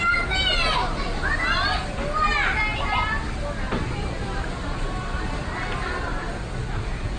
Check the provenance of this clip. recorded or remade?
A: recorded